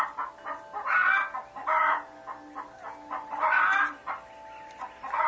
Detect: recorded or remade recorded